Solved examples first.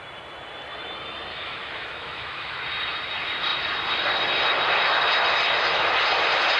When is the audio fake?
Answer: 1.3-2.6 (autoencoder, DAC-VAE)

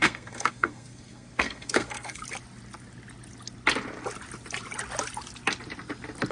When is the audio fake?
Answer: 0.0-2.2 (codec, SNAC)

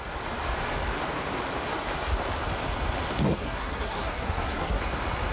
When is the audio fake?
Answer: 3.3-4.8 (codec, SNAC)

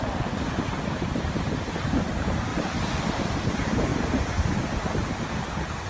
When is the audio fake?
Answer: 2.5-3.2 (vocoder, BigVGAN v2); 3.9-4.9

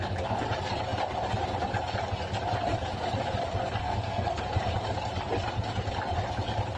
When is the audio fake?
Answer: 3.8-4.4 (codec, SNAC)

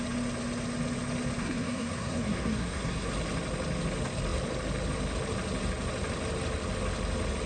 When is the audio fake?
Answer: 1.4-3.1 (codec, SNAC)

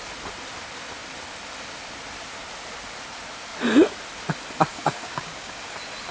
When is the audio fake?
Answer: 4.7-5.6 (codec, DAC)

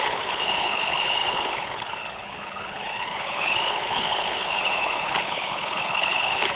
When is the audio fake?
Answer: 0.0-6.6 (codec, HILCodec)